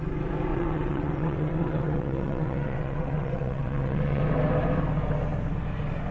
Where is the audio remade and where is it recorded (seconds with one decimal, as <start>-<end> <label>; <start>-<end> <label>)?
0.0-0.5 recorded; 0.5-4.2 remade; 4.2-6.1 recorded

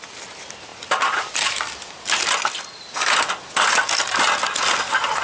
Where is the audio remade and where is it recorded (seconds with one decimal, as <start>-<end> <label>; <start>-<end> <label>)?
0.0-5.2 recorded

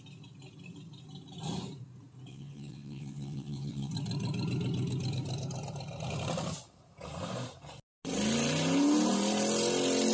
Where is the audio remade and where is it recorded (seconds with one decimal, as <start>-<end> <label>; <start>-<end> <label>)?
0.0-2.3 recorded; 2.3-3.9 remade; 3.9-10.1 recorded